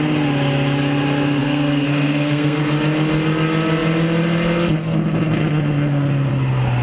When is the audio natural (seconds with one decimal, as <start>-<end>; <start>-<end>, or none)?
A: 0.0-1.4; 2.6-6.8